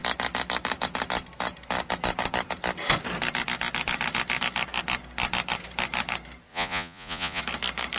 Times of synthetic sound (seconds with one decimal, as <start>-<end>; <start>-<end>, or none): 6.5-7.4